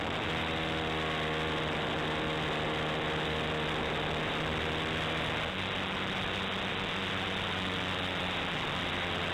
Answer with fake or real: real